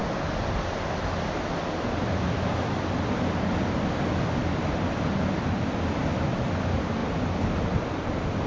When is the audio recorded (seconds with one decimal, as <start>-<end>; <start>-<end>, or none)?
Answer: 0.0-8.5